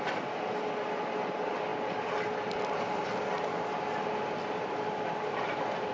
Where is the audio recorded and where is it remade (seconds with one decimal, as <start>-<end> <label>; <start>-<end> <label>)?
0.0-5.9 recorded